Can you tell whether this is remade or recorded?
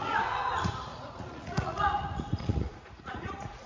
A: remade